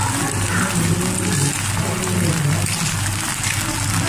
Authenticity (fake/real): real